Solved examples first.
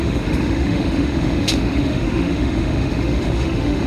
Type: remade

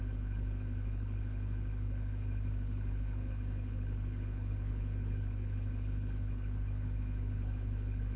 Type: remade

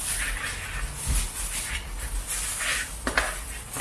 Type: recorded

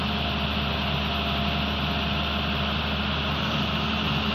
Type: recorded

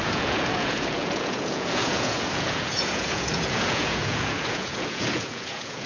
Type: remade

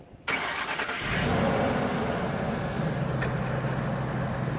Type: recorded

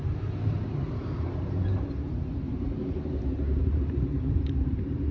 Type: remade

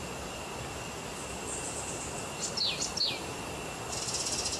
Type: recorded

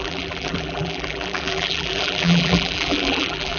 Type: remade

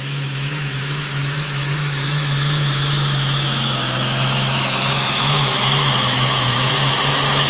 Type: remade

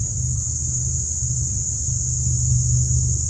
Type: recorded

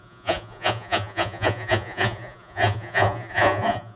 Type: remade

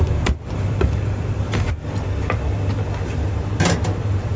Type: recorded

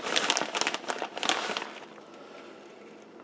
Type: recorded